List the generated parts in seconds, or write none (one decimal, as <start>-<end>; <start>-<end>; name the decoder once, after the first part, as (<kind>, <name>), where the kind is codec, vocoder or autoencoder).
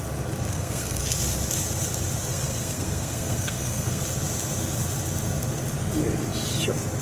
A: 0.5-1.0 (codec, SNAC); 2.3-4.0